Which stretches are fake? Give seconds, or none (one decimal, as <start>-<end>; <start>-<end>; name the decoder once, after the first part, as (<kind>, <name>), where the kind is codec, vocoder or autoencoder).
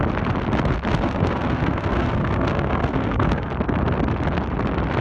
0.9-3.5 (codec, SNAC)